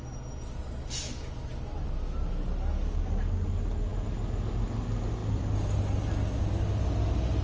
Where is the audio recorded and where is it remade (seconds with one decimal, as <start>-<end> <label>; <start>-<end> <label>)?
0.0-7.4 recorded